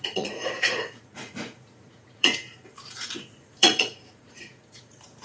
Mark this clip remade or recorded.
remade